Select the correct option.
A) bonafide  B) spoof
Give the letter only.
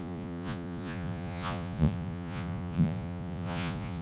B